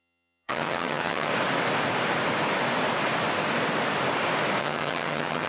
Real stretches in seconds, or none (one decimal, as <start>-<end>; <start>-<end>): 1.3-4.6